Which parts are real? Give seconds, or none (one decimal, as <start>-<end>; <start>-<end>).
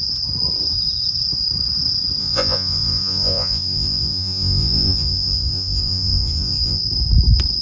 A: 0.0-2.2; 6.8-7.6